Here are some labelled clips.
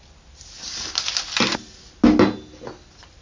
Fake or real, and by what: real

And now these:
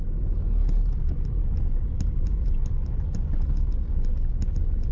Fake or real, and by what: real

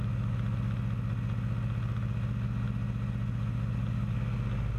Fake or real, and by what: real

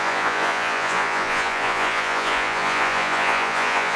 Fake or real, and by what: fake, vocoder, Vocos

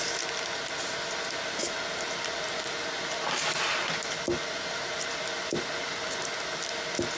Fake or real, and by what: real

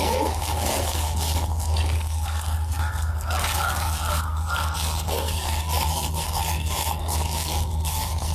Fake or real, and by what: fake, codec, SNAC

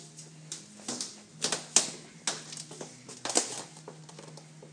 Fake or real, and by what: real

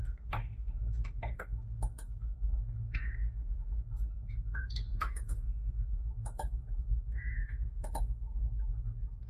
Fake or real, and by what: fake, autoencoder, DAC-VAE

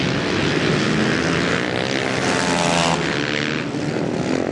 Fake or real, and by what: real